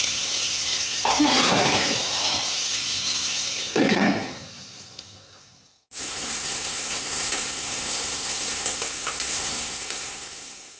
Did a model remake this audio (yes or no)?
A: yes